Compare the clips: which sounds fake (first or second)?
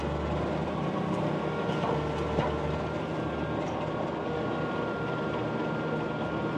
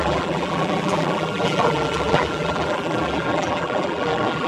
second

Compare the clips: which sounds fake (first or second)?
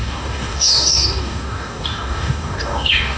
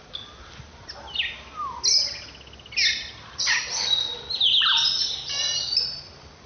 first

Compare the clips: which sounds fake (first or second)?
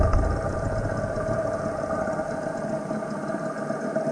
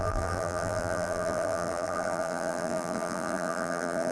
second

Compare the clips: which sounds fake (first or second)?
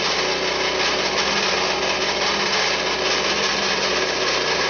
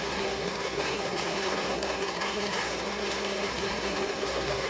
second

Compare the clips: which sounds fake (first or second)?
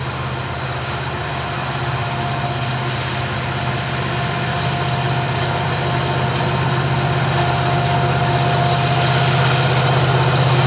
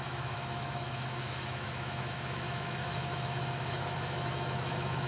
second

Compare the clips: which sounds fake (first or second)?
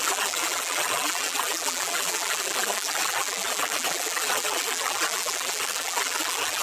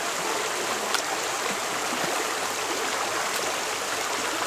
first